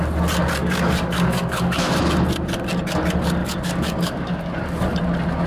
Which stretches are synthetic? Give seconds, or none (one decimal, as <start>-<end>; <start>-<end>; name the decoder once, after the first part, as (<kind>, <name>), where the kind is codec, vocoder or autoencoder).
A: 0.6-2.0 (codec, DAC); 3.4-4.6